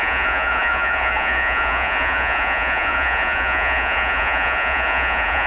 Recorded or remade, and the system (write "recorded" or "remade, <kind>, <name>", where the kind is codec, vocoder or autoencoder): remade, vocoder, Vocos